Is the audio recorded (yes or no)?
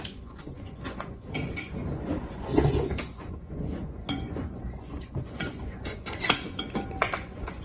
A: no